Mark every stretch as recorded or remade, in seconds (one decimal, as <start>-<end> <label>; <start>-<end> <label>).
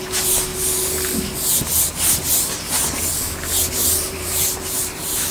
0.0-3.5 recorded; 3.5-5.3 remade